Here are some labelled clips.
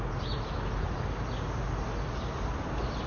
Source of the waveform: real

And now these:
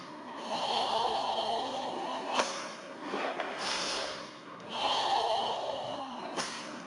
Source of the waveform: fake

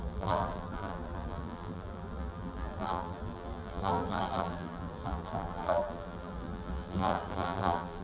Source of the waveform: fake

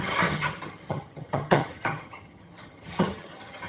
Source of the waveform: fake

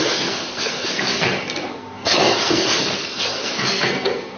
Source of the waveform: fake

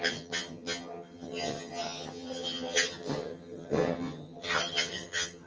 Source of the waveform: fake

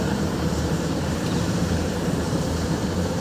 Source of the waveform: fake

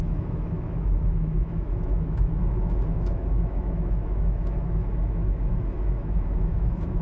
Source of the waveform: fake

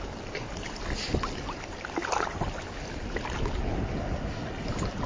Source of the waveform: real